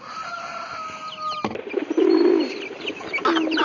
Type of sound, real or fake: real